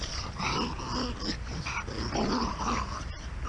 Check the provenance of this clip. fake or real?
real